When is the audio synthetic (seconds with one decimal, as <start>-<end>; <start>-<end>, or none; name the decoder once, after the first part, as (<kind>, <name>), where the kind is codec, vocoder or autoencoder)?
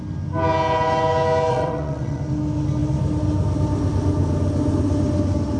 1.5-2.2 (vocoder, WaveNeXt)